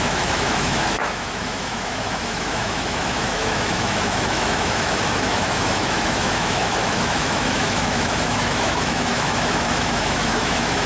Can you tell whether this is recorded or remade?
remade